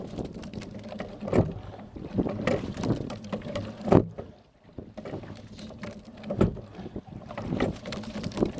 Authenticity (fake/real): fake